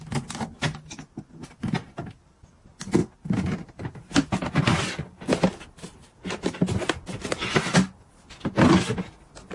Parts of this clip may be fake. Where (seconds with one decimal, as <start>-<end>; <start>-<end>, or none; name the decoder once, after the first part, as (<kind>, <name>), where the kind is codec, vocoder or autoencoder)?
none